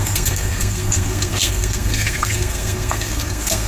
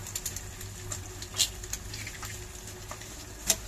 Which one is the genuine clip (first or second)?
second